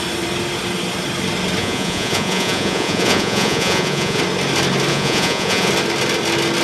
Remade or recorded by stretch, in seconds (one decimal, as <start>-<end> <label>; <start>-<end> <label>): 0.0-1.6 recorded; 1.6-4.2 remade; 4.2-4.9 recorded; 4.9-5.7 remade; 5.7-6.6 recorded